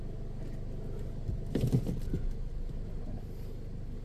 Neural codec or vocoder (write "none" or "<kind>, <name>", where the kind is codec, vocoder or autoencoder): none